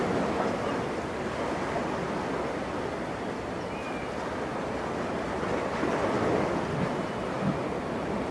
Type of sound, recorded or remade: recorded